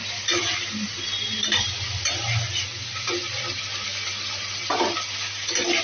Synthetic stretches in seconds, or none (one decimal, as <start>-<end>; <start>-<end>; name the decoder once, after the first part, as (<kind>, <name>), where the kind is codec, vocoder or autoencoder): none